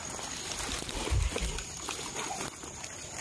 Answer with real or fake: real